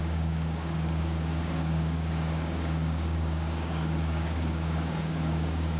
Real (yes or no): no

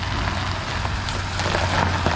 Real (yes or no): yes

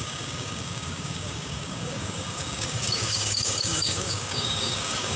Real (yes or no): no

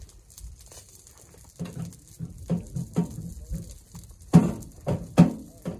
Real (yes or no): yes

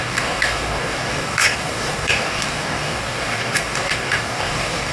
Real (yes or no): no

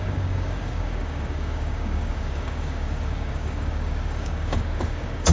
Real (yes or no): no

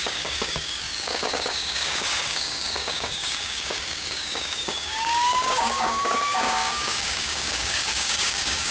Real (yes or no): no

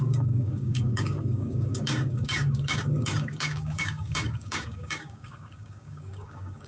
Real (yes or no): no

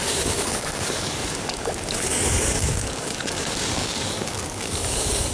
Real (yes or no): no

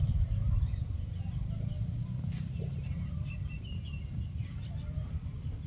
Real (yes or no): yes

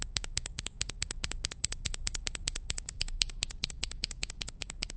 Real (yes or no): no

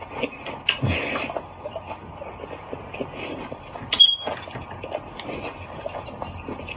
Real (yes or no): yes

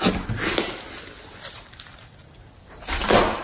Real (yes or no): yes